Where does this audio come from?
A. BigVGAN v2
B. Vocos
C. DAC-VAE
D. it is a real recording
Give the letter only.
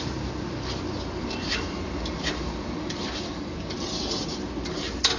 D